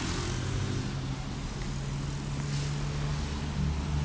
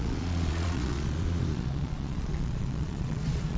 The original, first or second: first